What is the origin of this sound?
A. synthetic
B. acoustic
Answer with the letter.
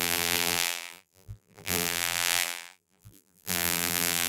A